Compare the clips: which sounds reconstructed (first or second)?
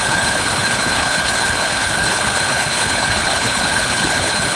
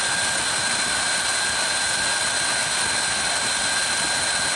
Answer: first